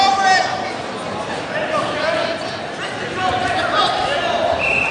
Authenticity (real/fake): real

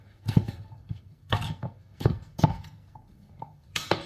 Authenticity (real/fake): fake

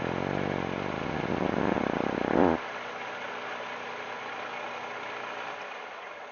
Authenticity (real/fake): real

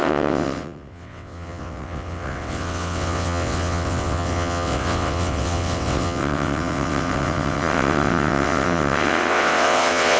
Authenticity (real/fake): fake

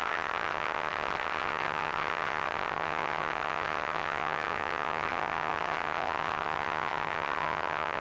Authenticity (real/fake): fake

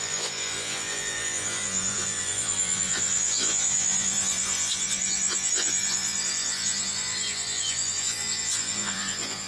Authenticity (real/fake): fake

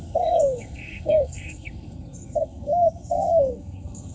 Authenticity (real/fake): fake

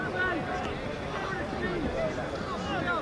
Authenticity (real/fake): real